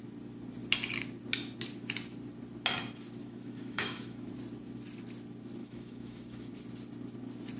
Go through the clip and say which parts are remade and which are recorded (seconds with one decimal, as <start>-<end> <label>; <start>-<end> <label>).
0.0-3.2 recorded; 3.2-4.3 remade; 4.3-5.6 recorded; 5.6-6.5 remade; 6.5-7.6 recorded